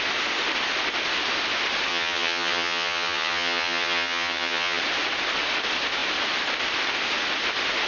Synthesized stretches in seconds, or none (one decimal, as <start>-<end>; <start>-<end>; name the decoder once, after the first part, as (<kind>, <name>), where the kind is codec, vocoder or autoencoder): 1.9-4.8 (vocoder, HiFi-GAN)